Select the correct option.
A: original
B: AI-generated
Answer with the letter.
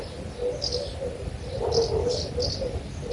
A